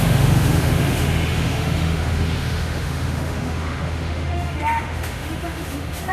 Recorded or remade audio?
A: remade